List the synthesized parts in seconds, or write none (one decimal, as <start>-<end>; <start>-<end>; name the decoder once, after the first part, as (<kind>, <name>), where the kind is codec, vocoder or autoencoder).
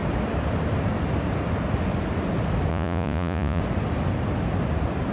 2.7-3.6 (vocoder, Vocos)